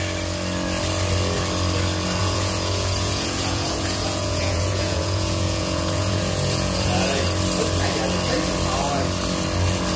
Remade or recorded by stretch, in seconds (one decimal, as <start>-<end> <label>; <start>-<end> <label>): 0.0-2.2 recorded; 2.2-7.2 remade; 7.2-10.0 recorded